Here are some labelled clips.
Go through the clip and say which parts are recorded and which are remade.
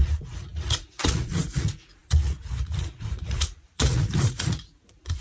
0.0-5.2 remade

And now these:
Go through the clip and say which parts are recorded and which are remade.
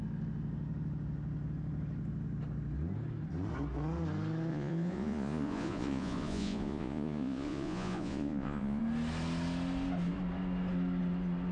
0.0-4.5 recorded; 4.5-8.8 remade; 8.8-11.5 recorded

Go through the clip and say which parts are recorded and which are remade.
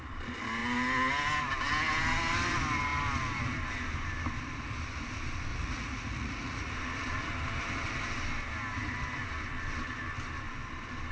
0.0-5.5 recorded; 5.5-6.7 remade; 6.7-11.1 recorded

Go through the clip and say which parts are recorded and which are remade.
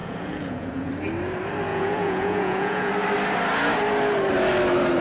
0.0-0.9 remade; 0.9-1.7 recorded; 1.7-2.9 remade; 2.9-5.0 recorded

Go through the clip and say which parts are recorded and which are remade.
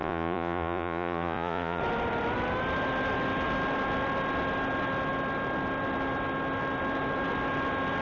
0.0-1.8 remade; 1.8-8.0 recorded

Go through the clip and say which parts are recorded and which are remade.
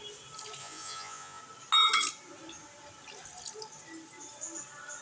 0.0-0.6 recorded; 0.6-1.4 remade; 1.4-5.0 recorded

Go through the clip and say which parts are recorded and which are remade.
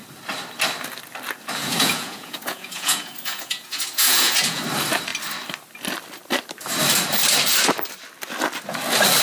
0.0-1.6 recorded; 1.6-4.6 remade; 4.6-9.2 recorded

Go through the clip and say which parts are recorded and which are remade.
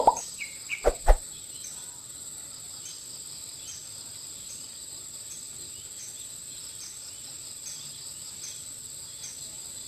0.0-9.9 recorded